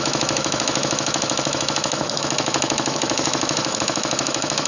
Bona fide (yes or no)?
no